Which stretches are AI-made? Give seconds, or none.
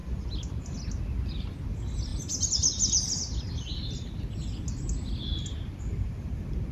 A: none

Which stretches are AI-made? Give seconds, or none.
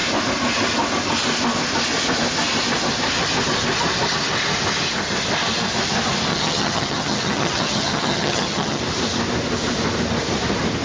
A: 6.3-8.8 (vocoder, HiFi-GAN)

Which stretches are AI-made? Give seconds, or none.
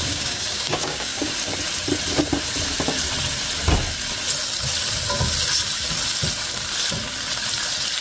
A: 0.0-1.3 (codec, DAC)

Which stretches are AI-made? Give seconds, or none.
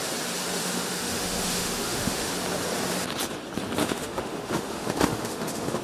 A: 0.6-2.3 (autoencoder, DAC-VAE); 3.8-5.8